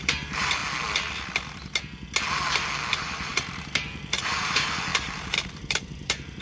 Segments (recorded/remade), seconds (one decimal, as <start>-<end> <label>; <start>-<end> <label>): 0.0-0.6 remade; 0.6-2.9 recorded; 2.9-6.4 remade